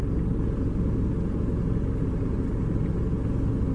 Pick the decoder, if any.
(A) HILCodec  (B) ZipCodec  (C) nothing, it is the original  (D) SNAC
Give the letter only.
C